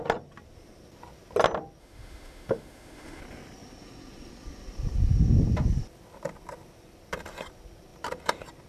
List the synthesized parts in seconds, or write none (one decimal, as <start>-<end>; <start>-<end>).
1.8-3.2